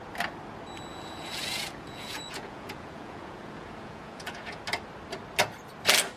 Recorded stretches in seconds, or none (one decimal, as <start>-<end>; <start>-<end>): 0.0-0.9; 4.6-6.2